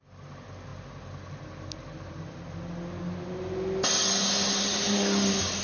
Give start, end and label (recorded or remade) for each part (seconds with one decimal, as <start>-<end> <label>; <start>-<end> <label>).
0.0-5.6 recorded